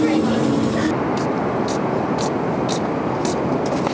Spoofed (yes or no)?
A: no